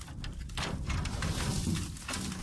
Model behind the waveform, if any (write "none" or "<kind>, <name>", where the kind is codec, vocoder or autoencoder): none